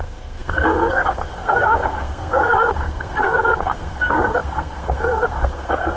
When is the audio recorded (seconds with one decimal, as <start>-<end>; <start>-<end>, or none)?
none

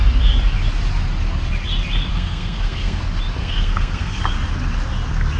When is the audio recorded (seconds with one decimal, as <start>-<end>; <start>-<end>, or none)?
0.0-2.1; 3.0-3.4; 4.2-5.4

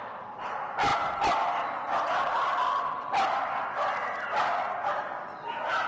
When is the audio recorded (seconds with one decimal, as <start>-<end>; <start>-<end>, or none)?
0.0-5.9

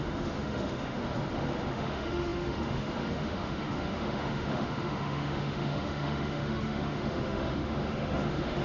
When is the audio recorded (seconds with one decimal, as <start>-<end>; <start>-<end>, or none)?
1.0-1.7

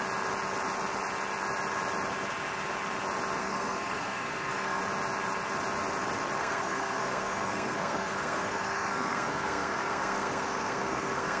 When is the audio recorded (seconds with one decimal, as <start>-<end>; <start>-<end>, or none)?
0.0-3.4; 4.8-6.4

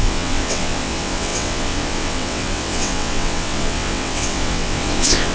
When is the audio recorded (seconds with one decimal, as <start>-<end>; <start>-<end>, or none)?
none